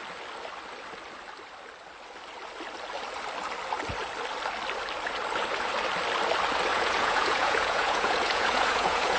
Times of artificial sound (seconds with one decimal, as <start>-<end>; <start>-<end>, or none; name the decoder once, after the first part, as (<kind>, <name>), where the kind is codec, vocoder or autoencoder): 6.7-9.2 (vocoder, Vocos)